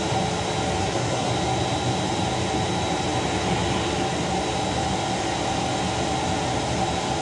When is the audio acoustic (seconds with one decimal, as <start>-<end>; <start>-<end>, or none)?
0.0-0.8; 1.3-7.2